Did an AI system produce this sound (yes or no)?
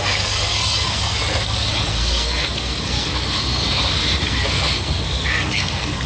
yes